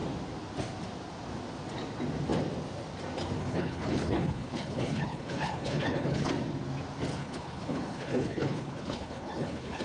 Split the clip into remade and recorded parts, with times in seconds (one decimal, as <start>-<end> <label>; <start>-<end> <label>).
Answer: 0.0-3.4 recorded; 3.4-6.3 remade; 6.3-7.1 recorded; 7.1-9.8 remade